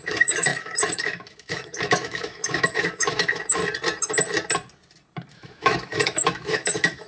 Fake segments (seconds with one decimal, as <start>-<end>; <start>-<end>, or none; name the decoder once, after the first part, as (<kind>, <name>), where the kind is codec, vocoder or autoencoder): 0.0-3.6 (autoencoder, DAC-VAE); 5.3-7.1